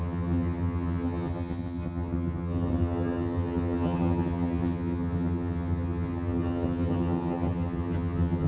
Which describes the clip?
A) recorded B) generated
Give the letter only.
B